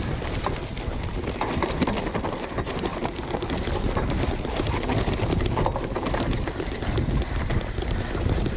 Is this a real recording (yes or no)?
yes